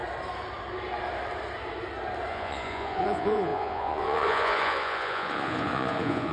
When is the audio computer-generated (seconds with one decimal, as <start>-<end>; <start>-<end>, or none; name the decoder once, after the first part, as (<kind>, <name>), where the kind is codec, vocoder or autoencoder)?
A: 2.3-6.3 (vocoder, Vocos)